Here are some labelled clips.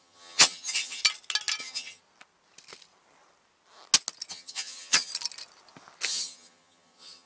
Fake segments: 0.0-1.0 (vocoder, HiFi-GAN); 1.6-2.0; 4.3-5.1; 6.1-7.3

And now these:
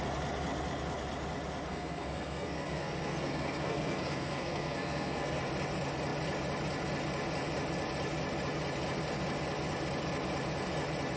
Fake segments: 1.7-5.4 (codec, SNAC)

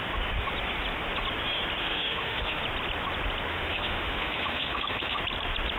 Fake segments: 1.8-2.6 (autoencoder, DAC-VAE); 3.5-5.2

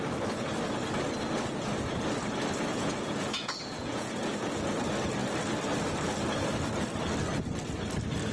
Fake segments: 2.7-4.3 (vocoder, Vocos)

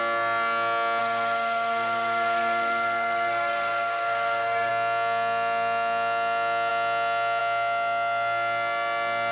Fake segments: 1.0-4.7 (codec, SNAC)